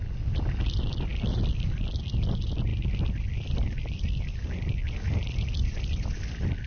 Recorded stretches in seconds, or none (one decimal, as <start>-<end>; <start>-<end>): 0.0-6.7